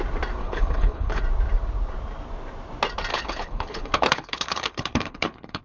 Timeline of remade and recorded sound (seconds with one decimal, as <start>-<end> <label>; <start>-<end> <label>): 0.0-0.4 recorded; 0.4-1.2 remade; 1.2-3.1 recorded; 3.1-5.6 remade